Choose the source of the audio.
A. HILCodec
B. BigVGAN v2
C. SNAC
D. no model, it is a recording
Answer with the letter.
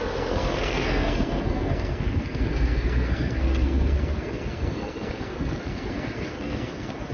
C